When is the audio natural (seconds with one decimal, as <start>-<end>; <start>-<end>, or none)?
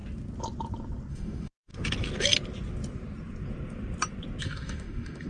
0.0-1.1; 1.7-4.4